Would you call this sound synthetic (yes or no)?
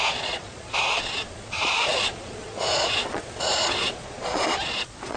yes